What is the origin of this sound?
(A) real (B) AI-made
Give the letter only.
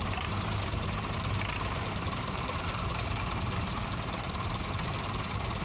B